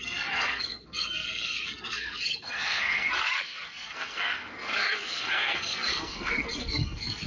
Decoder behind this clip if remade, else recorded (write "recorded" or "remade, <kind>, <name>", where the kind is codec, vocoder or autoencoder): remade, codec, SNAC